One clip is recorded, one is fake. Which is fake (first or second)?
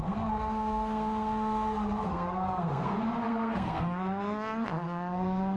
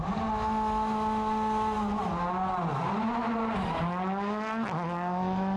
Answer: first